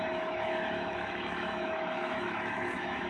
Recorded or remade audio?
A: remade